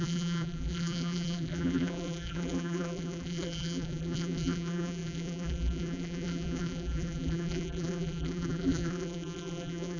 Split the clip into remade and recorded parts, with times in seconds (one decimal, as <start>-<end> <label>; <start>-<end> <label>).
0.0-10.0 remade